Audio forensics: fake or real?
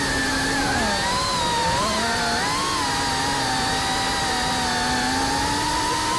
real